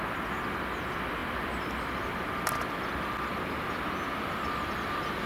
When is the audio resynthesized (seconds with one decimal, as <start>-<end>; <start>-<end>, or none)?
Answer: none